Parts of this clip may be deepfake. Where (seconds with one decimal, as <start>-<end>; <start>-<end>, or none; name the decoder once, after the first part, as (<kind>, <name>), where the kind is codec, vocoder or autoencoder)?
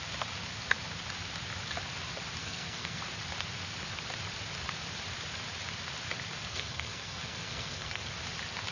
2.4-3.0 (codec, SNAC); 6.5-8.1